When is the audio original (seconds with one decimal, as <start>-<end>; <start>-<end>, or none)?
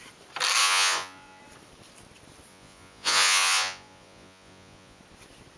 0.0-0.6; 1.4-2.5; 5.0-5.6